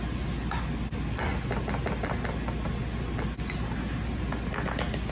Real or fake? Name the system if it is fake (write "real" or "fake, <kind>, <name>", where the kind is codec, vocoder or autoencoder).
real